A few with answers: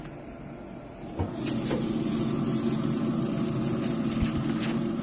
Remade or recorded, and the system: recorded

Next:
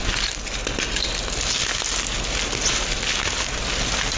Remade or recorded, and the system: recorded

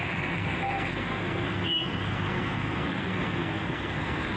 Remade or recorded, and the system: remade, codec, SNAC